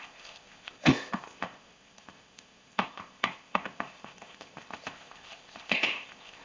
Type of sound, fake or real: fake